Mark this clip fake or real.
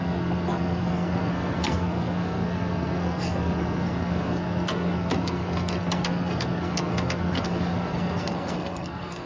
fake